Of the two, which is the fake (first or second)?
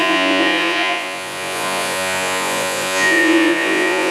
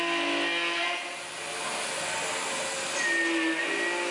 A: first